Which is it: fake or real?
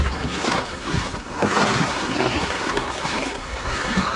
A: fake